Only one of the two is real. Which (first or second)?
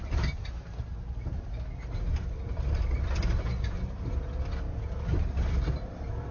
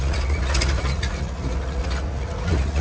first